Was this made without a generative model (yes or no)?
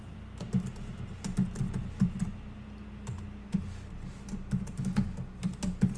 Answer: yes